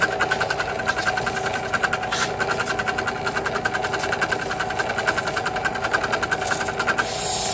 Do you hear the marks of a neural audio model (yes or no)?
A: no